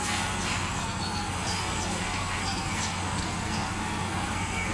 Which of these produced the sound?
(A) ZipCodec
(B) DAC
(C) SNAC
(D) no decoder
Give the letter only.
C